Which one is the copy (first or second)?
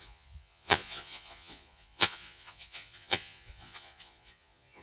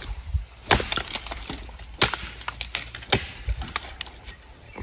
first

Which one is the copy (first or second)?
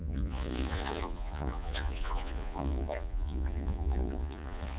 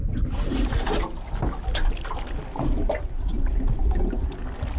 first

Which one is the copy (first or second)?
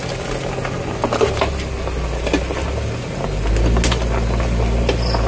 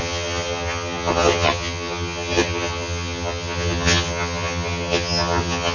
second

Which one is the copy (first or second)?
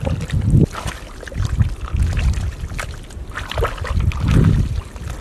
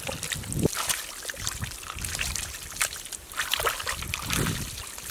second